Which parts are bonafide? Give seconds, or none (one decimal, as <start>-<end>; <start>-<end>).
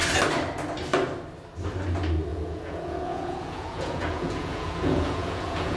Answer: 0.0-2.3